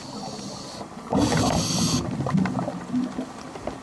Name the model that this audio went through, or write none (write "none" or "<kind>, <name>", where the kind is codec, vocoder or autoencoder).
none